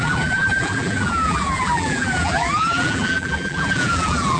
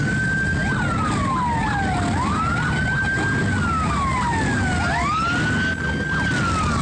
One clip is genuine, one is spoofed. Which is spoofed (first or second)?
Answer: first